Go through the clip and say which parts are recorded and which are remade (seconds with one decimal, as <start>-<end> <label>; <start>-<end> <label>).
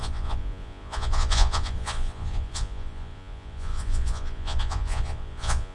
0.0-5.7 remade